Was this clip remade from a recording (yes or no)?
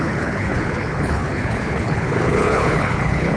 yes